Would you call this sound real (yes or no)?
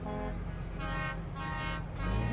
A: yes